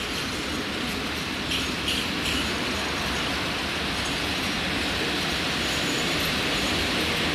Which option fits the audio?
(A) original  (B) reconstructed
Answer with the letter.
A